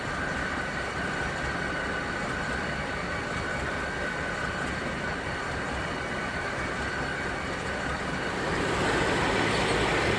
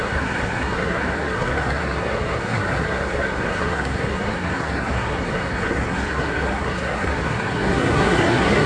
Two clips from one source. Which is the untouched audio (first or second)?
first